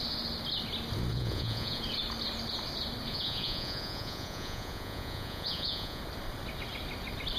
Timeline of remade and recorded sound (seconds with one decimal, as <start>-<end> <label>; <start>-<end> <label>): 0.0-1.1 recorded; 1.1-1.8 remade; 1.8-3.1 recorded; 3.1-6.0 remade; 6.0-7.4 recorded